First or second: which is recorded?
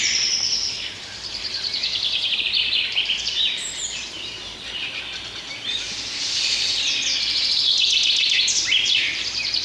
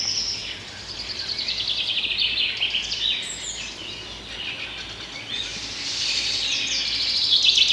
second